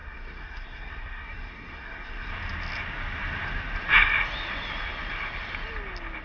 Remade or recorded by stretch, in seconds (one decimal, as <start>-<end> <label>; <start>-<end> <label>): 0.0-2.3 remade; 2.3-6.2 recorded